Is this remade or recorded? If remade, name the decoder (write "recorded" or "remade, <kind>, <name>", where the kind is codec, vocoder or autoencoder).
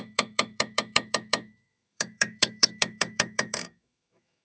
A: remade, autoencoder, DAC-VAE